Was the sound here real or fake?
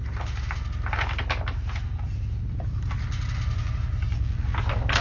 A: real